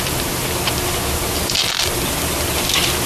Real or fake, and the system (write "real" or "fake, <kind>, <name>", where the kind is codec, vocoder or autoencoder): real